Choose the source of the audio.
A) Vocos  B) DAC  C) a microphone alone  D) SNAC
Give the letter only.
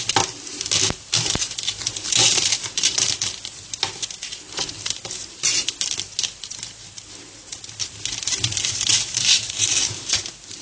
C